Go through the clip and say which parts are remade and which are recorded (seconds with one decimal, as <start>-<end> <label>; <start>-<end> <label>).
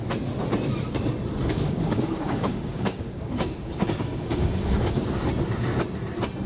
0.0-1.4 recorded; 1.4-5.3 remade; 5.3-6.5 recorded